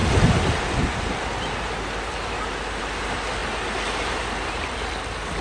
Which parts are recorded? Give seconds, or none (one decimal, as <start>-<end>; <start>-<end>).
0.0-5.4

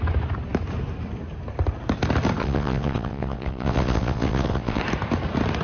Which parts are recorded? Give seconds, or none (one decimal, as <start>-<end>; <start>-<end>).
0.0-2.4; 4.8-5.6

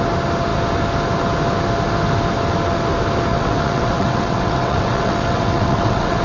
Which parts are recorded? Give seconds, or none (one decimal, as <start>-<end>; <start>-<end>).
0.0-3.3

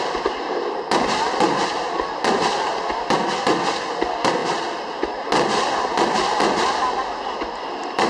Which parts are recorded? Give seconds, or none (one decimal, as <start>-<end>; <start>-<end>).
0.0-8.1